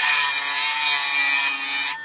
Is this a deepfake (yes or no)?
no